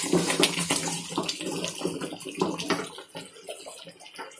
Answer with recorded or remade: recorded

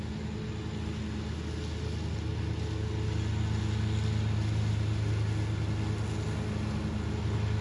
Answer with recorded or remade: recorded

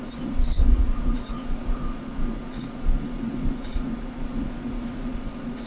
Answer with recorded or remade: remade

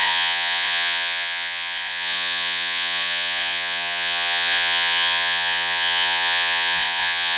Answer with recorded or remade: remade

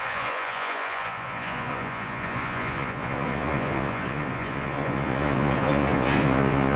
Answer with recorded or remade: remade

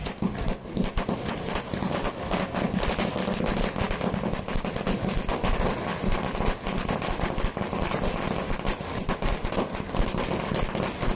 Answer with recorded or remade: recorded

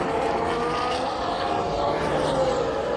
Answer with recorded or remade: recorded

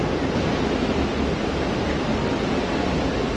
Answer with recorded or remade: recorded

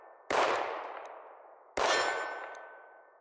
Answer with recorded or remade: recorded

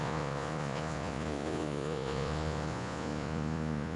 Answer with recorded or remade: remade